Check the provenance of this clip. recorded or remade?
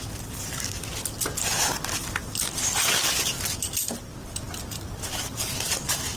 recorded